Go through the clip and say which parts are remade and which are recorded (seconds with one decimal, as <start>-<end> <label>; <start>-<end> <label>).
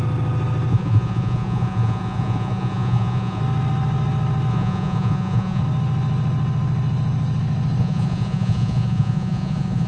0.0-0.7 recorded; 0.7-3.4 remade; 3.4-4.5 recorded; 4.5-5.6 remade; 5.6-7.8 recorded; 7.8-9.9 remade